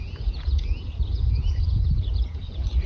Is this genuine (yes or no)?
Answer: no